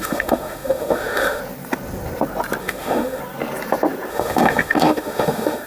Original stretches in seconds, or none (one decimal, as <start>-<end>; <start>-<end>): 1.4-2.6; 3.2-4.1